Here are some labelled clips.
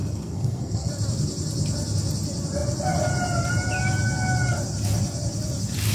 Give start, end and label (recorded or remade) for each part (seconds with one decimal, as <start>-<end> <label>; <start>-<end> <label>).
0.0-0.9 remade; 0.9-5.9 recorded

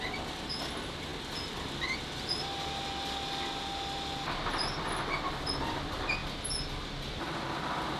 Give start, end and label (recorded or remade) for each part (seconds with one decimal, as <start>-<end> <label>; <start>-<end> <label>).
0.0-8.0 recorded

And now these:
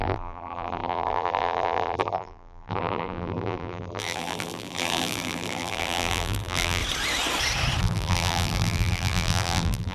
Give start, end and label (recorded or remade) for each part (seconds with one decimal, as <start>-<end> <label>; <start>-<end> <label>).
0.0-6.8 remade; 6.8-7.8 recorded; 7.8-9.9 remade